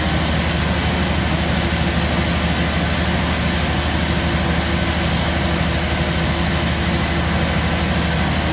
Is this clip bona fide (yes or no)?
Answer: yes